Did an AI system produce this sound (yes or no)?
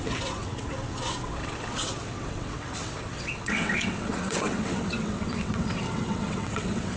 yes